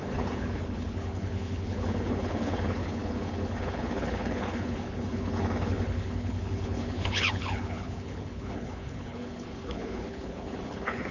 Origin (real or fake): fake